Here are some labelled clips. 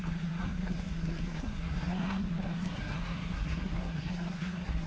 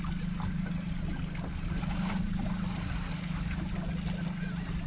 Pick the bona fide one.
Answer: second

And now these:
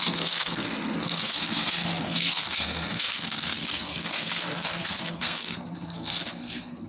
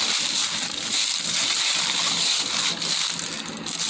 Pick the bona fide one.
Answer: second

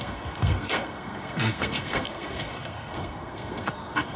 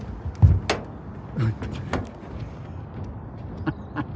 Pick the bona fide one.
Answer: second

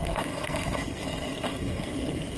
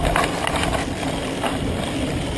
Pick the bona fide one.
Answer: second